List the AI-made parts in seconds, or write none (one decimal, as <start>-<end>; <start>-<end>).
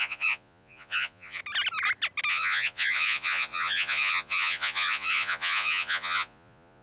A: 0.0-1.4; 2.3-6.8